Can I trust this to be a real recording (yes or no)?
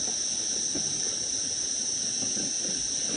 yes